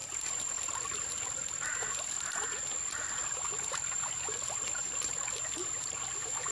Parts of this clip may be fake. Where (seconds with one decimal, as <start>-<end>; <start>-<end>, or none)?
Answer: 2.7-5.1; 5.6-6.5